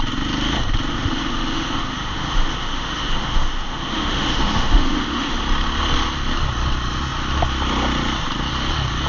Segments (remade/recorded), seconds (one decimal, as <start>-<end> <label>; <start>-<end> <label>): 0.0-0.9 recorded; 0.9-5.4 remade; 5.4-9.1 recorded